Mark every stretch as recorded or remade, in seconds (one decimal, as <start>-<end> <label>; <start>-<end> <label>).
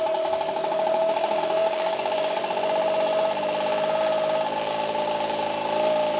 0.0-2.4 remade; 2.4-6.2 recorded